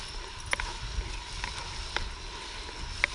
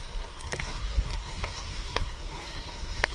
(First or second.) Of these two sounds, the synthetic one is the second